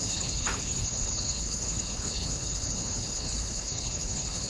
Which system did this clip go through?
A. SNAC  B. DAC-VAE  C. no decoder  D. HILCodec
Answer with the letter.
D